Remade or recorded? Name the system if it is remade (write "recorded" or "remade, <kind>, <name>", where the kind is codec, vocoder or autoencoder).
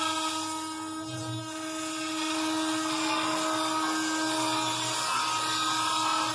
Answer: recorded